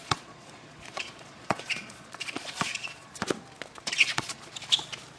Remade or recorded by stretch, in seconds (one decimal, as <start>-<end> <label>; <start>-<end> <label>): 0.0-3.1 remade; 3.1-3.8 recorded; 3.8-4.5 remade; 4.5-5.2 recorded